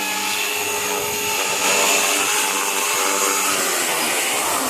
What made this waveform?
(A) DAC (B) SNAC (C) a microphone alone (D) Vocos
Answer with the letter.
C